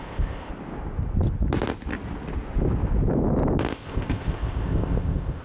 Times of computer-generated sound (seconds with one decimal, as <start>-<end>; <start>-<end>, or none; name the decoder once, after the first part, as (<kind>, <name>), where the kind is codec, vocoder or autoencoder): 0.0-0.5 (codec, ZipCodec); 3.7-5.4